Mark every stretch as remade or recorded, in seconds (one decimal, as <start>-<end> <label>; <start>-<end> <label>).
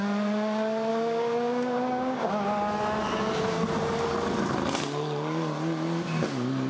0.0-0.9 recorded; 0.9-2.3 remade; 2.3-6.7 recorded